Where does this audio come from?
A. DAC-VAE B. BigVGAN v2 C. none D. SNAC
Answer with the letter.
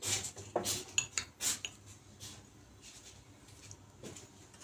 C